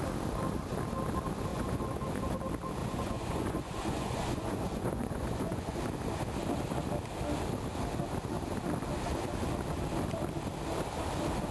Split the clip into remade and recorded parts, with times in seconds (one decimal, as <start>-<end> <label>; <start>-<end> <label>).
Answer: 0.0-1.5 recorded; 1.5-2.4 remade; 2.4-2.8 recorded; 2.8-5.8 remade; 5.8-11.5 recorded